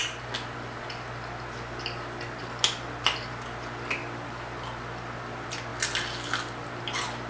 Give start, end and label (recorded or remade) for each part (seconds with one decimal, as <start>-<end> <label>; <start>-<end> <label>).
0.0-7.3 recorded